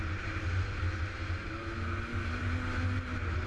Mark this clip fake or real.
real